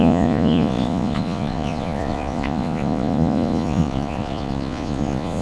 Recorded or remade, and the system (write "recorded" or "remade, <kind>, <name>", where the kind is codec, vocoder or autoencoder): remade, vocoder, Vocos